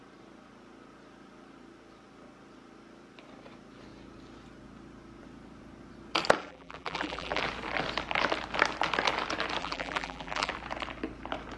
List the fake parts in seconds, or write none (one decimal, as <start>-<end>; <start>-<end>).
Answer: 6.4-7.4; 9.6-10.5